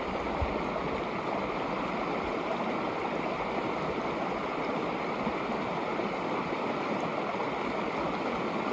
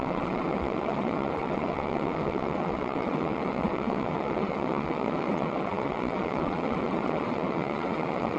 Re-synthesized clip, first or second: second